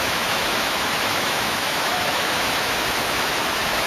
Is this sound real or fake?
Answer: fake